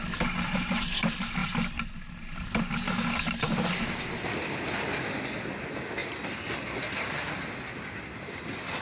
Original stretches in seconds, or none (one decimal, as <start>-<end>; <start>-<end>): 0.0-8.8

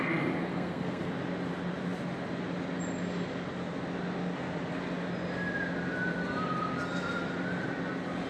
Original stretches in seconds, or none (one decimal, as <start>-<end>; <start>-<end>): 0.0-0.5; 1.1-8.3

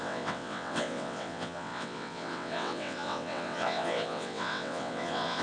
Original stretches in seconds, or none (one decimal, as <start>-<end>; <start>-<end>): none

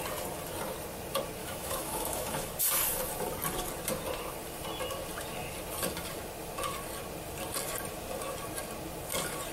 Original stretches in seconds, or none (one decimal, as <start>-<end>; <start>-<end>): 0.0-1.4; 2.5-9.5

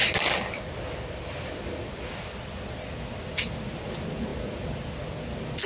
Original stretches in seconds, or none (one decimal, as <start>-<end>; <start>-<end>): 0.0-5.7

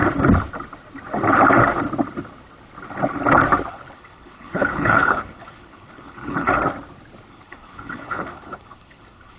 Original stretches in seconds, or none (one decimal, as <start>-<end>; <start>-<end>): 0.0-3.7; 6.5-7.3

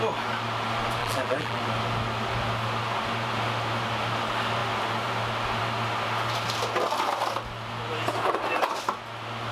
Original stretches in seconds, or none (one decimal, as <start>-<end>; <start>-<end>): 0.0-1.0; 1.6-9.5

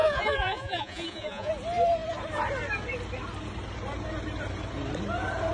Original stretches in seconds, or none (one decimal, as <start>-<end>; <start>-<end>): 1.5-5.5